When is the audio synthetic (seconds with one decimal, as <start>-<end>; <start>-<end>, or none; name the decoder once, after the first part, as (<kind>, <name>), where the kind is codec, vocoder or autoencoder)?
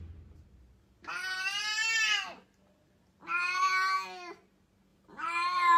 4.9-5.8 (vocoder, BigVGAN v2)